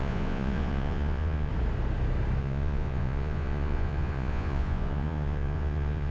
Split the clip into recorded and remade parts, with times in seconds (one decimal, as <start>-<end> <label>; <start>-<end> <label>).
0.0-1.5 remade; 1.5-2.4 recorded; 2.4-6.1 remade

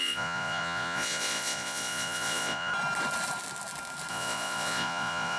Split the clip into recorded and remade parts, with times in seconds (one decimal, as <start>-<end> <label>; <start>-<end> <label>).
0.0-2.7 remade; 2.7-4.1 recorded; 4.1-5.4 remade